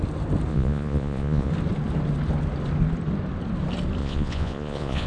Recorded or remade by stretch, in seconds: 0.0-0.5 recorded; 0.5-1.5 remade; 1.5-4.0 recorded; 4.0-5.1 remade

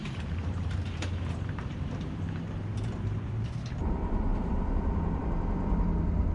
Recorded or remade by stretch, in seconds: 0.0-3.8 remade; 3.8-4.3 recorded; 4.3-5.2 remade; 5.2-6.3 recorded